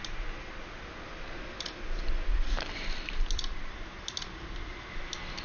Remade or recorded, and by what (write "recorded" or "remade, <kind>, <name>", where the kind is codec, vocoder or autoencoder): recorded